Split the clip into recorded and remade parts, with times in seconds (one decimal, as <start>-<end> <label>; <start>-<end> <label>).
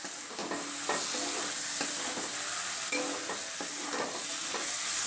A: 0.0-5.1 recorded